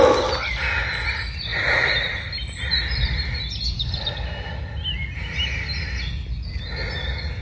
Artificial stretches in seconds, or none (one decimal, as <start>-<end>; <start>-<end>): 1.5-4.0

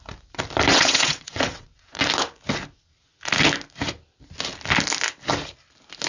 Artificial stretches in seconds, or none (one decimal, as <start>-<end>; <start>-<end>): 0.7-2.0

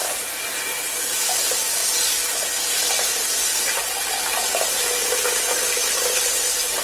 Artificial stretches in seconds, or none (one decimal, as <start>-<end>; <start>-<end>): 0.0-1.2

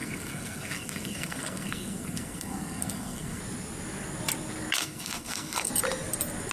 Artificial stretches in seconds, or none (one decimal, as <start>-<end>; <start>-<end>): 0.0-3.4; 4.8-5.7

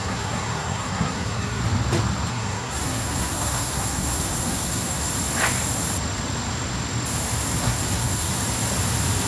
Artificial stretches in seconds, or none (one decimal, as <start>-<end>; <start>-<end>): 0.0-1.6; 2.3-5.1; 7.6-8.3

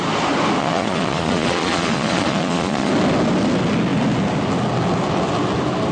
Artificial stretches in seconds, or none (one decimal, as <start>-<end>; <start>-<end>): 0.6-2.9

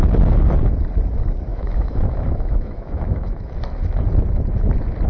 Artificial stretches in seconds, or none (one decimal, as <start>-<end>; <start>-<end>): 1.5-3.5

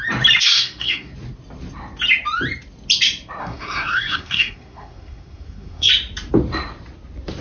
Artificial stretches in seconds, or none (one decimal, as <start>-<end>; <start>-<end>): 0.4-1.1; 3.4-5.9